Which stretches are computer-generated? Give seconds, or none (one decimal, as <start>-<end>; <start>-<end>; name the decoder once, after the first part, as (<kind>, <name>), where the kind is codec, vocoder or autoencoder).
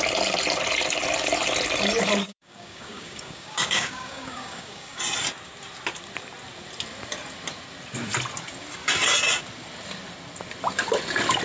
2.2-5.0 (codec, DAC)